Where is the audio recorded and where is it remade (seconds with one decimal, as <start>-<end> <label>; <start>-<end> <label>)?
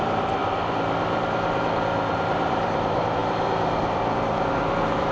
0.0-0.4 remade; 0.4-1.6 recorded; 1.6-5.1 remade